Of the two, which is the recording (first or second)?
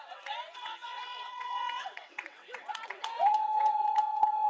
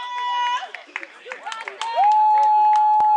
second